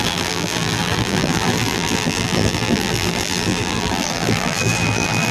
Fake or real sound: fake